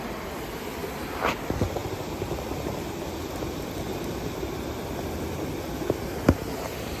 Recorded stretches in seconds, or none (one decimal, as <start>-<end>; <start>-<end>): 0.0-7.0